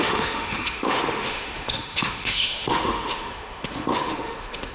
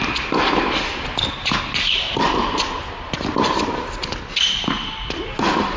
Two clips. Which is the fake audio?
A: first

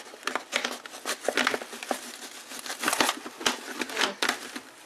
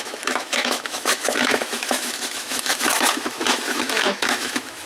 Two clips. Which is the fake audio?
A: second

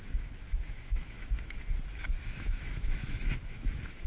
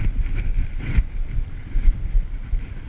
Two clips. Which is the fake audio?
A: first